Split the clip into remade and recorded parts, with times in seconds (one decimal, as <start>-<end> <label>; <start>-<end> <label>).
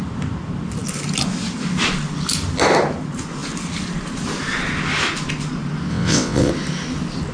0.0-5.9 recorded; 5.9-6.5 remade; 6.5-7.3 recorded